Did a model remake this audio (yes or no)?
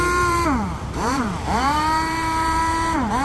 yes